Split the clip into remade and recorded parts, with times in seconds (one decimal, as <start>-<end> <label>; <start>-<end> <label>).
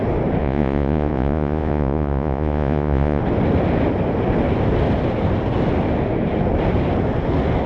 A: 0.0-0.4 recorded; 0.4-3.2 remade; 3.2-7.7 recorded